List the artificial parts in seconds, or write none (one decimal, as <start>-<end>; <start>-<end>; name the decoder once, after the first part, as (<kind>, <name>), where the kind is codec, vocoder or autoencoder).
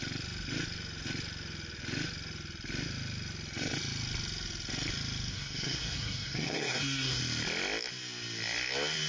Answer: 5.3-7.2 (codec, SNAC)